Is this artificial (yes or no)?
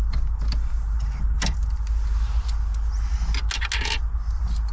no